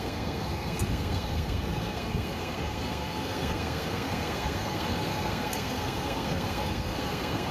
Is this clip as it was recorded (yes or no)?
no